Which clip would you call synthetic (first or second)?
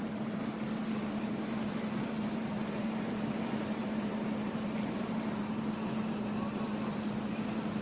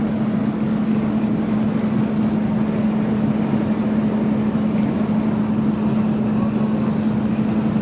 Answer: first